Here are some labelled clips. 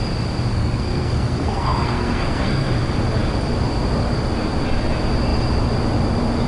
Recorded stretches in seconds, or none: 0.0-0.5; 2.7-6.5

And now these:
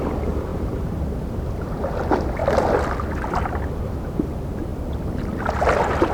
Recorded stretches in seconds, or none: 0.0-6.1

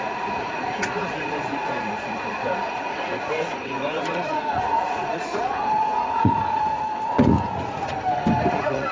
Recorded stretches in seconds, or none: 7.9-8.5

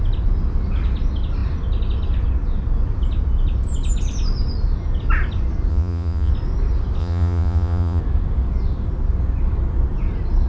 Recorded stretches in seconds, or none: 0.0-5.7; 6.3-7.0; 8.0-10.5

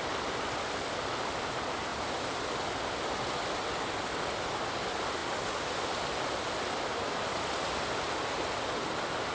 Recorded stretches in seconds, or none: 0.0-9.3

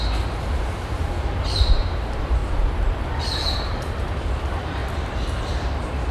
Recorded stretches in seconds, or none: 2.4-3.7; 4.8-5.4

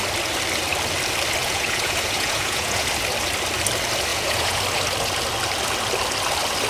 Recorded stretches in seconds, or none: 0.0-1.4; 2.9-4.1; 4.6-6.7